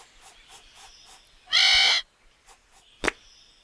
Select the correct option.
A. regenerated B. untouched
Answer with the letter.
B